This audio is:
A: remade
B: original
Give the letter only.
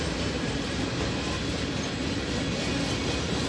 B